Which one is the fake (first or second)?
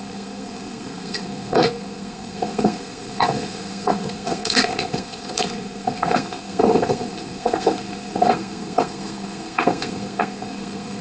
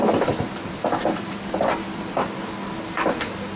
first